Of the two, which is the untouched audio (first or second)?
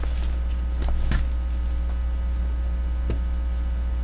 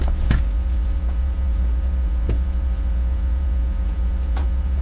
first